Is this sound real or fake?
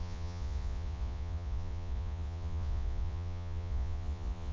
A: fake